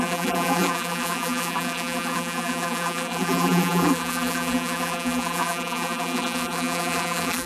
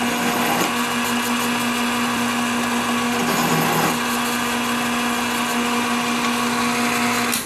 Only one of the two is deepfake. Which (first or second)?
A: first